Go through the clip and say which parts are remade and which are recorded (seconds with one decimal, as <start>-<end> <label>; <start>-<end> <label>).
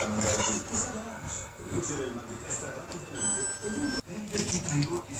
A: 0.0-1.1 recorded; 1.1-1.8 remade; 1.8-5.2 recorded